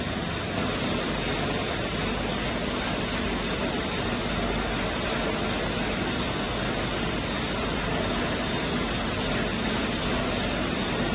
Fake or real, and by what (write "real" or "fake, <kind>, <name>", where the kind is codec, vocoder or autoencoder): real